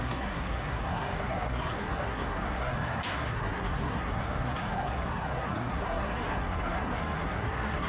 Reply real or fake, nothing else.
fake